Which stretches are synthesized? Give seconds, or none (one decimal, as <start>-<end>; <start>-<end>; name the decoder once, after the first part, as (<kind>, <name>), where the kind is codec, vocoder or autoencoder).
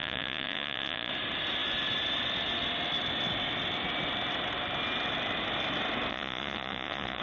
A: 0.0-1.1 (vocoder, Vocos); 6.1-7.2